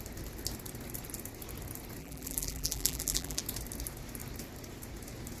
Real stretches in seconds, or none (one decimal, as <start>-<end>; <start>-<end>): 0.0-2.0; 3.4-5.4